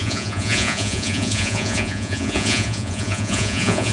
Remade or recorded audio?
remade